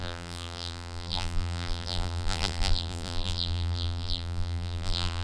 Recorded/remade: remade